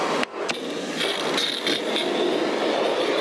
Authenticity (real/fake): real